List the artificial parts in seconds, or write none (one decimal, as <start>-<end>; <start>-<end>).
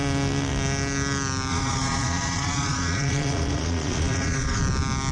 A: 1.5-4.6